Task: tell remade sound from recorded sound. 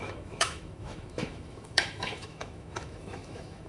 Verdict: remade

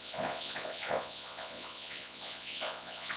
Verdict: remade